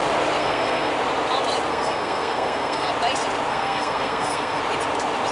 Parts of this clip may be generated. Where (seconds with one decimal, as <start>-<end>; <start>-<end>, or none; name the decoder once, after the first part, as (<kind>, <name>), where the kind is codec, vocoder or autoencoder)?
0.4-0.9 (codec, SNAC); 1.7-2.9; 3.5-4.6